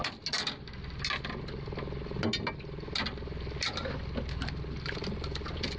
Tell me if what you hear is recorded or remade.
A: recorded